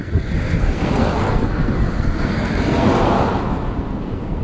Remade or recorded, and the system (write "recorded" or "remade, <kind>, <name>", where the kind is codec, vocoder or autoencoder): remade, codec, SNAC